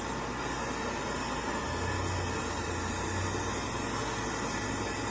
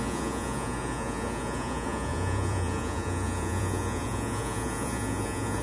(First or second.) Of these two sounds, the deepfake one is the second